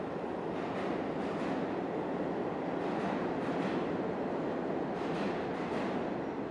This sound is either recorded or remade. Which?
recorded